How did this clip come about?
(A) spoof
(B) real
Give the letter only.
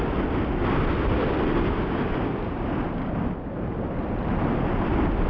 B